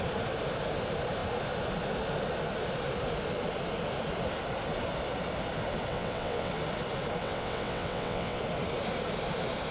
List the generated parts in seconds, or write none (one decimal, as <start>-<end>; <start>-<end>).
5.9-6.5; 7.2-8.4